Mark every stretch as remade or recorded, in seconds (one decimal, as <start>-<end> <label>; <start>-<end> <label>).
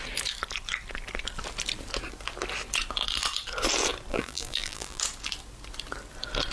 0.0-4.1 recorded; 4.1-5.0 remade; 5.0-6.5 recorded